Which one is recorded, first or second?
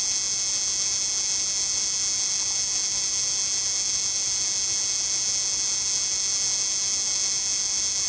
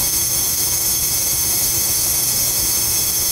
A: first